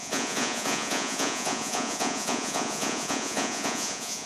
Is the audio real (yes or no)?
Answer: no